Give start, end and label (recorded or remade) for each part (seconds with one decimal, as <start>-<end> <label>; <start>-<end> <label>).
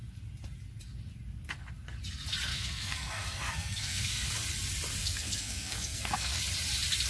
0.0-2.5 recorded; 2.5-4.3 remade; 4.3-5.0 recorded; 5.0-6.4 remade; 6.4-7.1 recorded